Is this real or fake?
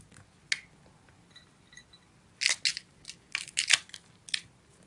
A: real